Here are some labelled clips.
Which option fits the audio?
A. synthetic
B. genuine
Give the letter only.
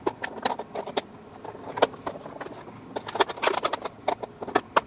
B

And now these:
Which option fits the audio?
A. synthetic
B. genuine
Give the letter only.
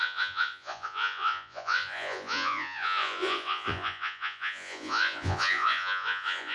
A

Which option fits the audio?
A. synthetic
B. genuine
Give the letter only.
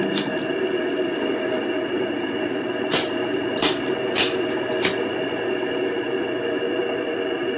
B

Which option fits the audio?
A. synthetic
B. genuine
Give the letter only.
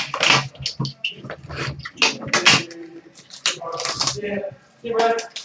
B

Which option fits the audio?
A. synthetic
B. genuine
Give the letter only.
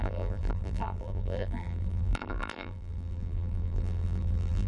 A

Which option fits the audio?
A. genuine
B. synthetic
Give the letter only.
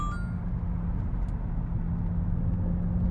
A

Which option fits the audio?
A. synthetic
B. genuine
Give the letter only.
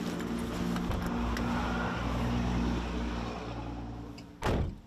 B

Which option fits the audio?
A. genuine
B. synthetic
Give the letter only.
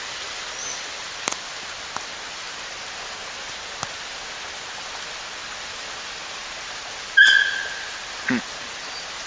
A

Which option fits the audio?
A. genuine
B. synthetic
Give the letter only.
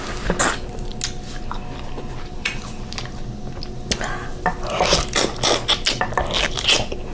A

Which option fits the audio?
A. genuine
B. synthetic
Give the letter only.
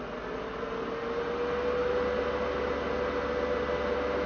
A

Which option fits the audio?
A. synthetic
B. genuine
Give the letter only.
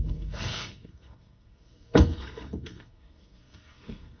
A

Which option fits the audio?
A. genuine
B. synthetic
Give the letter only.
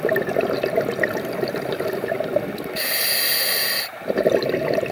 A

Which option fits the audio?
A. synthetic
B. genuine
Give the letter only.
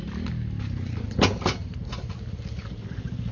B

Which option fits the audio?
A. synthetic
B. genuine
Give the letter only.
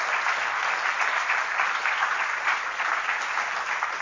B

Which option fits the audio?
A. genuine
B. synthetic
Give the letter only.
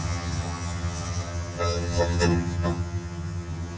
B